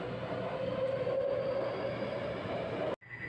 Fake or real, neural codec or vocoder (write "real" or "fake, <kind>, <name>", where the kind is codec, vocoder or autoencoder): real